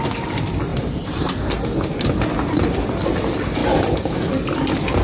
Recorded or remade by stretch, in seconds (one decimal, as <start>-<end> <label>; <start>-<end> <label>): 0.0-0.7 recorded; 0.7-1.5 remade; 1.5-3.6 recorded; 3.6-4.3 remade; 4.3-5.0 recorded